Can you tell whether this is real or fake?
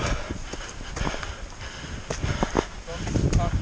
real